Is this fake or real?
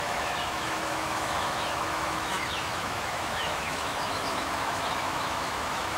fake